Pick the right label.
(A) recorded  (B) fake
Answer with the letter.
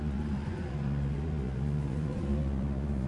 B